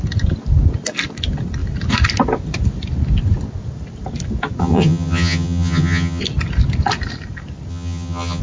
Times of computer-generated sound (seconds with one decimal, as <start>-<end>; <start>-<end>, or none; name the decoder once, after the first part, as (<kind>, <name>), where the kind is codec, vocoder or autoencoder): 4.6-6.2 (vocoder, HiFi-GAN); 7.7-8.4